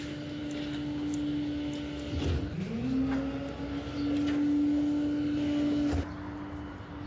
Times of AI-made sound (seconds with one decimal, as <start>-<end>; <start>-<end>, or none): none